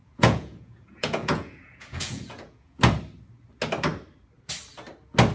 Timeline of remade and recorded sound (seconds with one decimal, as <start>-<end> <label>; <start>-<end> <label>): 0.0-2.8 remade; 2.8-5.3 recorded